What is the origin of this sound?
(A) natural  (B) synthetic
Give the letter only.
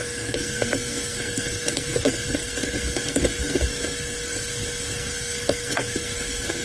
B